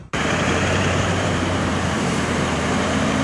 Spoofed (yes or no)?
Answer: yes